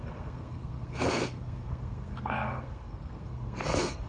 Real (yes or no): no